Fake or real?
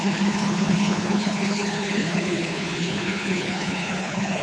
fake